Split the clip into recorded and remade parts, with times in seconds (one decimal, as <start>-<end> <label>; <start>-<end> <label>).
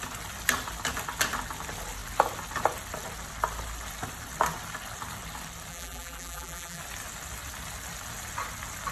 0.0-5.7 recorded; 5.7-6.8 remade; 6.8-8.9 recorded